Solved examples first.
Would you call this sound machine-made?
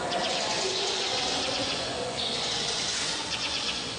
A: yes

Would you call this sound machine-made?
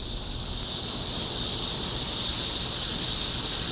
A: no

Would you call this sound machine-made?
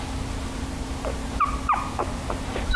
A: no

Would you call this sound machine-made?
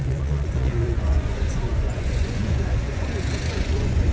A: yes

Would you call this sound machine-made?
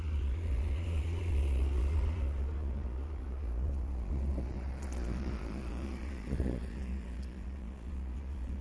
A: yes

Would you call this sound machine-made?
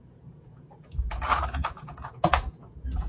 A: yes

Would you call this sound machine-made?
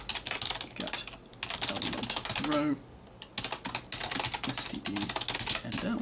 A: no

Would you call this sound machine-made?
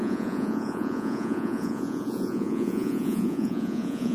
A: yes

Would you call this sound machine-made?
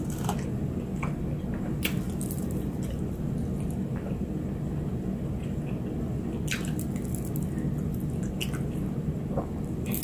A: no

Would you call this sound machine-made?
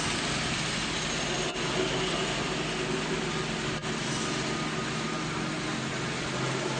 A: no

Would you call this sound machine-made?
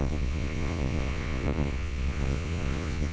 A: yes